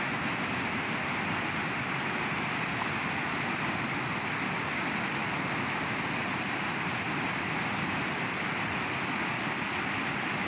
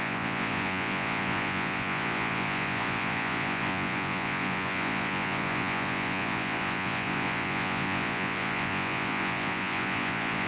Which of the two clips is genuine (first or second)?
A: first